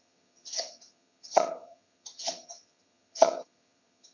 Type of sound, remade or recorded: remade